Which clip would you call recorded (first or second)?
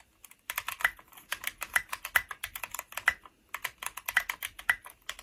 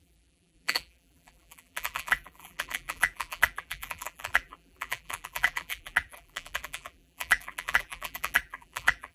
first